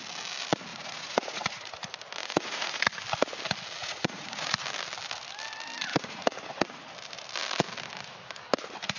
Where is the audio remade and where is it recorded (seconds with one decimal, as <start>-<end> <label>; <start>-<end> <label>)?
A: 0.0-0.7 recorded; 0.7-1.7 remade; 1.7-2.2 recorded; 2.2-2.8 remade; 2.8-3.8 recorded; 3.8-4.5 remade; 4.5-5.9 recorded; 5.9-6.9 remade; 6.9-9.0 recorded